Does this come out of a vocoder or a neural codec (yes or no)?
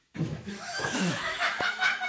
yes